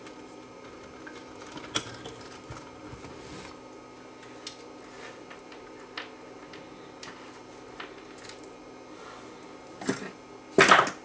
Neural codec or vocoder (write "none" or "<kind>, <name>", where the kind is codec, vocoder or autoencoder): none